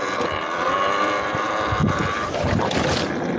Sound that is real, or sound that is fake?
real